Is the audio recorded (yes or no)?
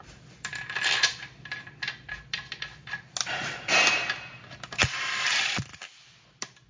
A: yes